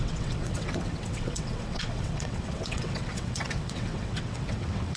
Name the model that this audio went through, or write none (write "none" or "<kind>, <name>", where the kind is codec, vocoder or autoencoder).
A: vocoder, WaveNeXt